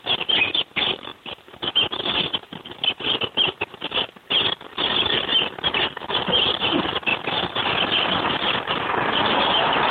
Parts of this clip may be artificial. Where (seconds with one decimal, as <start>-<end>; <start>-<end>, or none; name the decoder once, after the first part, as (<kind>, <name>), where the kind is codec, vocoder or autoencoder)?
0.0-7.1 (vocoder, BigVGAN v2); 8.6-9.9